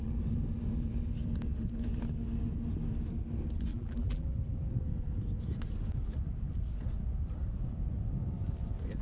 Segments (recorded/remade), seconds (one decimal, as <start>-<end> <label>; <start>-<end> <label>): 0.0-3.7 recorded; 3.7-4.3 remade; 4.3-9.0 recorded